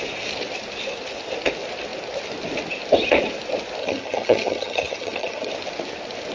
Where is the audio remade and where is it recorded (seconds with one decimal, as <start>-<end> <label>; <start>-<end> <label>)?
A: 0.0-3.8 recorded; 3.8-5.5 remade; 5.5-6.3 recorded